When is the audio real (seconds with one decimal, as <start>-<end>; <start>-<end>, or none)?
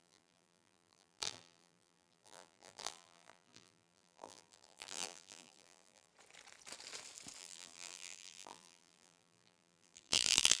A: 6.1-7.4